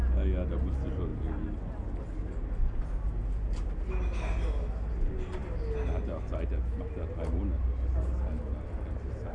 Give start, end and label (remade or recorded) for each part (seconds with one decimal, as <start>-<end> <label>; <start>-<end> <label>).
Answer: 0.0-9.3 recorded